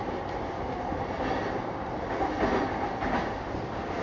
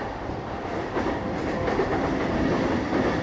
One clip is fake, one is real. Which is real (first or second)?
first